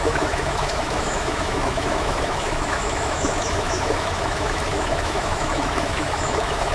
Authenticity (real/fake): fake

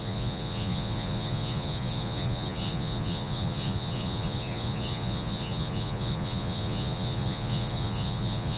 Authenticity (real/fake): fake